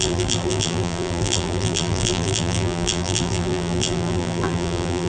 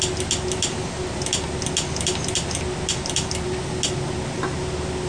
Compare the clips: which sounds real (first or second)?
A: second